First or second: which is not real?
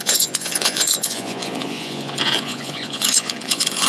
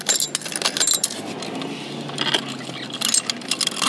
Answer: first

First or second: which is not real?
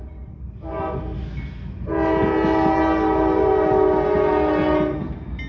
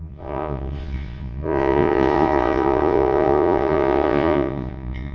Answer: second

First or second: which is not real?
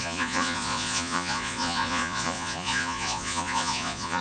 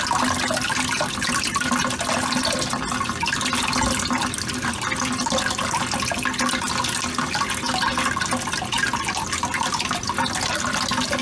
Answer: first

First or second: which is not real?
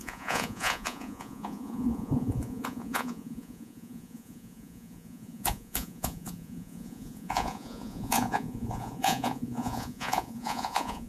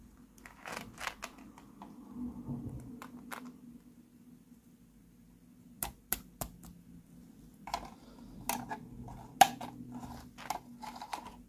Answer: first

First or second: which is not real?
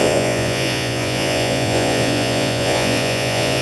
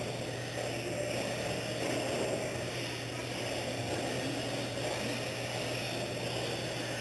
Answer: first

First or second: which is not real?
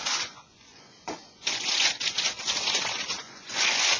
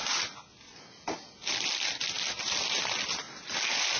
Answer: first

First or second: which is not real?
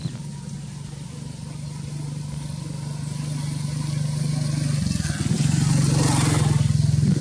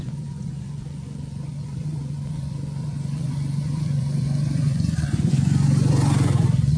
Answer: second